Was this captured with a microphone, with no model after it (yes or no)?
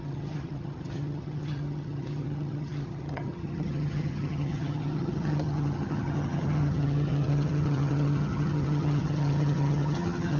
no